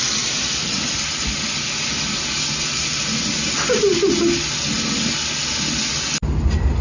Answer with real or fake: real